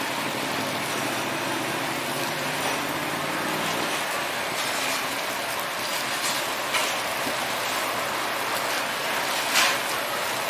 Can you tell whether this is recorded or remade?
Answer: recorded